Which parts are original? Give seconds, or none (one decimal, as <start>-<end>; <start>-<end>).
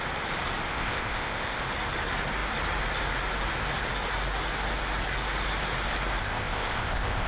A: 0.0-0.7; 1.6-6.2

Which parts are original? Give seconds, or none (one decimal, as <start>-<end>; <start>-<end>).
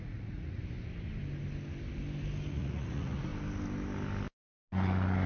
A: 0.6-2.5; 3.3-5.3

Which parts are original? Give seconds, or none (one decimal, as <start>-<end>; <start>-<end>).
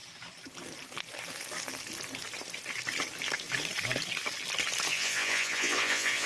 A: 0.0-4.9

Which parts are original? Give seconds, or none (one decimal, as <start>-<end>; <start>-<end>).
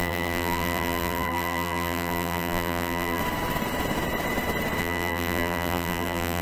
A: 3.2-4.8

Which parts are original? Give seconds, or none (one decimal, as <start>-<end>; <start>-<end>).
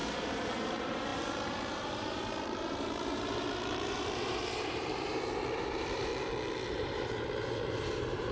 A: 6.1-6.7